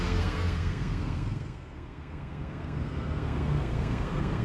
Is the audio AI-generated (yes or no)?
yes